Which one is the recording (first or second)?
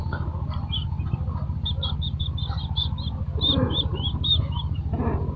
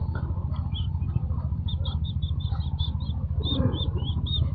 first